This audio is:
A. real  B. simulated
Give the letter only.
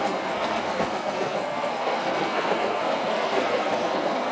B